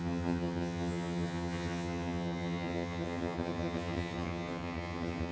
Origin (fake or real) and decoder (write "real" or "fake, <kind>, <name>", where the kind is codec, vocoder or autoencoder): fake, vocoder, HiFi-GAN